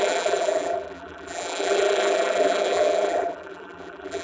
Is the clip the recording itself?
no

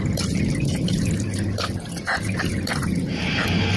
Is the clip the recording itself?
no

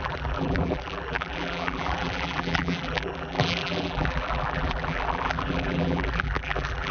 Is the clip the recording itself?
no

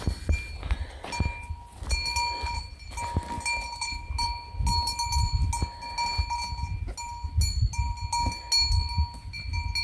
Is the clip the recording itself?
yes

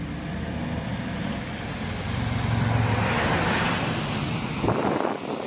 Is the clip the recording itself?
yes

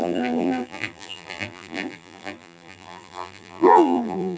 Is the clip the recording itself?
no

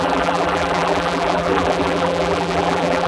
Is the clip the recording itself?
no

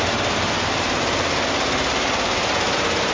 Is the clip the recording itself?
yes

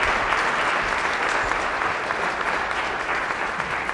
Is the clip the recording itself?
yes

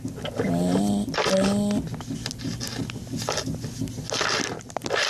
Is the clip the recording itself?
yes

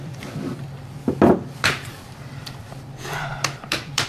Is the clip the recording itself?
no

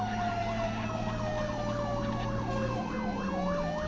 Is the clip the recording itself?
yes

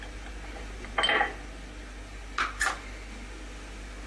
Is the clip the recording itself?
yes